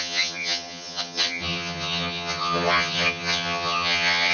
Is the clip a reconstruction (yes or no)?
yes